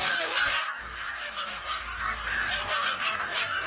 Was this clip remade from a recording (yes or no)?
yes